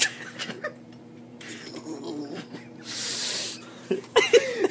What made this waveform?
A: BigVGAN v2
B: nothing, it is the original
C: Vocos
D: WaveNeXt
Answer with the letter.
A